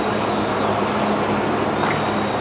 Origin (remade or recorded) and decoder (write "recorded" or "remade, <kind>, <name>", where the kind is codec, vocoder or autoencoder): recorded